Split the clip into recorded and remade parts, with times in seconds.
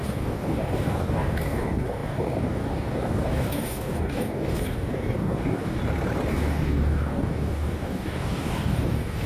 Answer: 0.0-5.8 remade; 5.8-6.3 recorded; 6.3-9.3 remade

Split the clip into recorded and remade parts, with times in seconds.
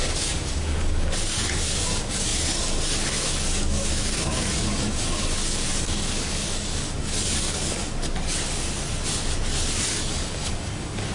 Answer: 0.0-7.8 remade; 7.8-9.9 recorded; 9.9-11.1 remade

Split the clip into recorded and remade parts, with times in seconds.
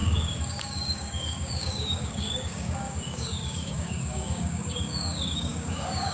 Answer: 0.0-6.1 remade